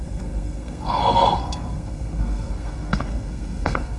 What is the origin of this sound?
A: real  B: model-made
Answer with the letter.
B